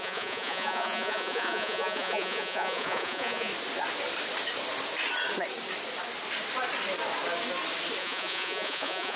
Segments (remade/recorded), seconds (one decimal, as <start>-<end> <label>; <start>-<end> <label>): 0.0-3.5 remade; 3.5-8.0 recorded; 8.0-9.2 remade